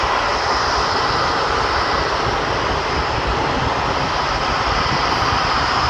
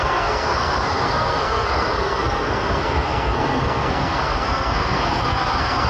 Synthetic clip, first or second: second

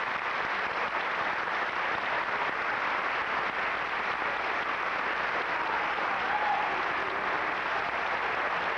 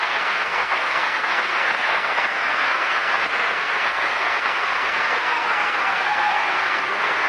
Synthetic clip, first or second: second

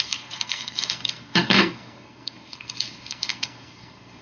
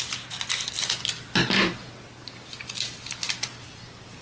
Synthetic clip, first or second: first